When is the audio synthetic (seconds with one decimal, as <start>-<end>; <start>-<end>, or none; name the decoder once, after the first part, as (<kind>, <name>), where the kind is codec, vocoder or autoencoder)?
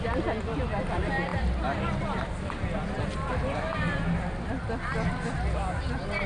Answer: none